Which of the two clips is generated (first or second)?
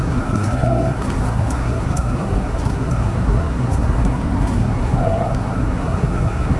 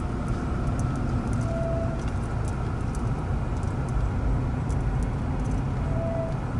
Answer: first